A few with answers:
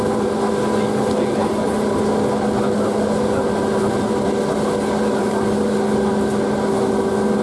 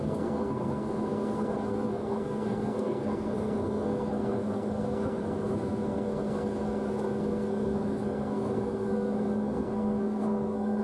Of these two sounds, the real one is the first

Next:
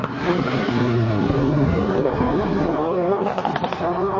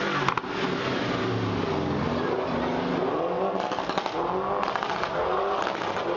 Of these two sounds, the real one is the second